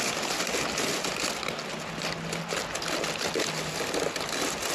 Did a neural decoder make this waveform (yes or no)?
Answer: no